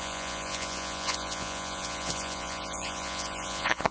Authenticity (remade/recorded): remade